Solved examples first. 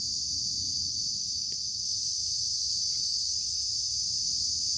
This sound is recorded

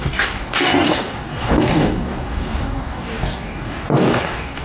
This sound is remade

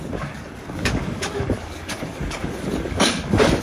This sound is remade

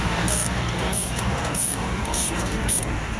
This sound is remade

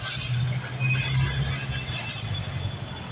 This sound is recorded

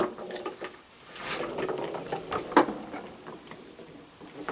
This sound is recorded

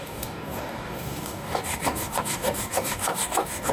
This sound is remade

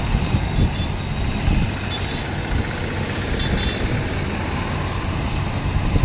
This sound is recorded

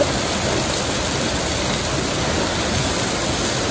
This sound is recorded